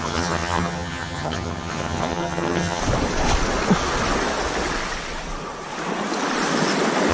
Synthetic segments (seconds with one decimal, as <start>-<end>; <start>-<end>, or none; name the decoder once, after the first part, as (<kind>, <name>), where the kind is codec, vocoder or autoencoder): 0.0-2.8 (vocoder, HiFi-GAN)

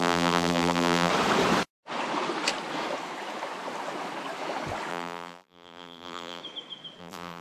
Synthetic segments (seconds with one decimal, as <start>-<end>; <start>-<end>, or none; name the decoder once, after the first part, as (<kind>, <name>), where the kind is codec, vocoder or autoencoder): 0.0-1.1 (vocoder, BigVGAN v2); 4.9-6.4; 7.0-7.4

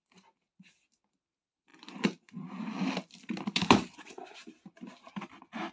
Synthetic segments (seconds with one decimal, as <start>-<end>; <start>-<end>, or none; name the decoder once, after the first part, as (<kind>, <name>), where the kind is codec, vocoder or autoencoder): none

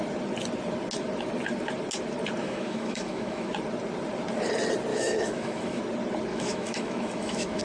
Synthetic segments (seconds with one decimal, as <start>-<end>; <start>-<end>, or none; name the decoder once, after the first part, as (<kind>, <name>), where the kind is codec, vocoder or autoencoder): 2.4-3.5 (autoencoder, DAC-VAE); 4.9-5.8; 6.3-7.6

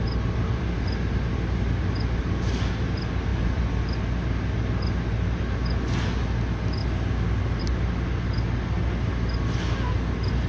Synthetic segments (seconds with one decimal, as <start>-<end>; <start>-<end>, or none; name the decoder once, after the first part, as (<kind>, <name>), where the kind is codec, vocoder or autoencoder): none

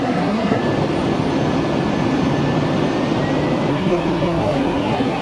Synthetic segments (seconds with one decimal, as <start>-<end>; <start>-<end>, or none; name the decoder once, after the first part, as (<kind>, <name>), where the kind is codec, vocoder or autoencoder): 0.0-0.6 (codec, SNAC); 3.7-5.2

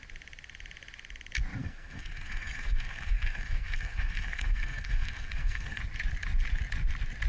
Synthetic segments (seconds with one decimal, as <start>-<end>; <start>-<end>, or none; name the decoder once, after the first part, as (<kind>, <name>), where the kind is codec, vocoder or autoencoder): 1.6-5.8 (codec, SNAC)